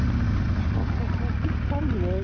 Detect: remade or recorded recorded